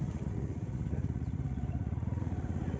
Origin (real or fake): fake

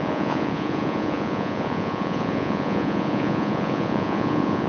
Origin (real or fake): fake